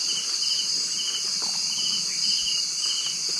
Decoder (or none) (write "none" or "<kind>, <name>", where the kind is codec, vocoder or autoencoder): none